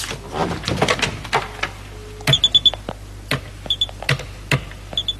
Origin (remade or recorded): recorded